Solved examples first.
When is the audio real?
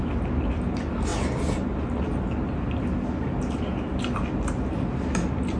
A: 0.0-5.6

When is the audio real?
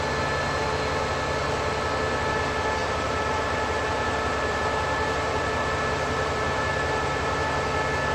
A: 0.0-2.8; 7.5-8.1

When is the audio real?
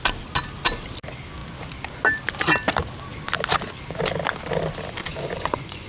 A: 0.0-5.1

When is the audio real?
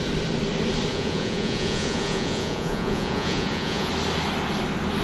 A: 0.0-0.9; 3.9-5.0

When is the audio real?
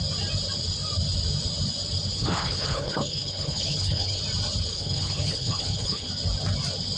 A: 0.0-2.1; 4.2-4.7; 6.1-7.0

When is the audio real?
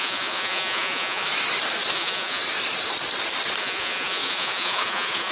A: 1.3-1.9; 2.4-3.6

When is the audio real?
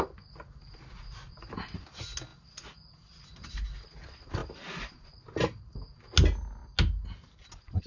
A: 0.0-7.9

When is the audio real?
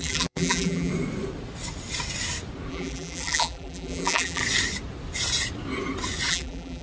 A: 0.9-2.7; 4.4-6.3